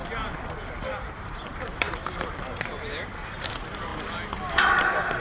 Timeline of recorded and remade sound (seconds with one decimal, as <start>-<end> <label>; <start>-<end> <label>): 0.0-0.9 recorded; 0.9-3.9 remade; 3.9-4.5 recorded; 4.5-5.2 remade